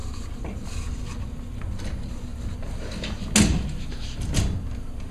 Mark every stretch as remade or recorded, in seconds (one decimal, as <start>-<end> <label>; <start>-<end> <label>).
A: 0.0-5.1 recorded